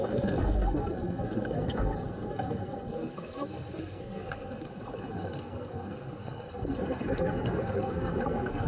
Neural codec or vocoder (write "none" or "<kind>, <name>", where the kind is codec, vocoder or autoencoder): codec, SNAC